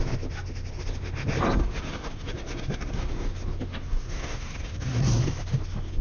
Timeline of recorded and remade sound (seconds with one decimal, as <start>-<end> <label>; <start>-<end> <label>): 0.0-1.6 recorded; 1.6-3.3 remade; 3.3-3.7 recorded; 3.7-5.2 remade; 5.2-6.0 recorded